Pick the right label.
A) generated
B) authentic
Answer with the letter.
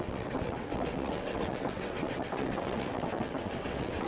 A